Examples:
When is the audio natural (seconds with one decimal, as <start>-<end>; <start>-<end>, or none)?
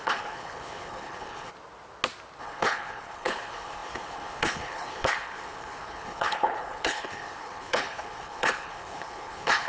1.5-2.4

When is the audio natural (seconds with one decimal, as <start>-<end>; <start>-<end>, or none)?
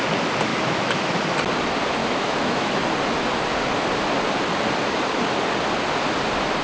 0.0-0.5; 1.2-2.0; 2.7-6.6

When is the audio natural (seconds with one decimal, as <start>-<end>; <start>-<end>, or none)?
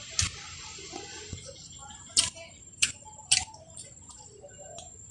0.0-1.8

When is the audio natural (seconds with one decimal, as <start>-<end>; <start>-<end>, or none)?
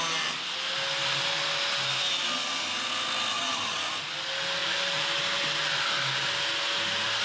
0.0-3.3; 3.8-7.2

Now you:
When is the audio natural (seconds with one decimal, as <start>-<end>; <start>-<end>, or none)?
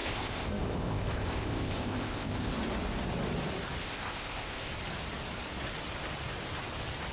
2.5-3.8; 4.7-7.1